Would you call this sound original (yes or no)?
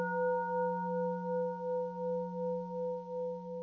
yes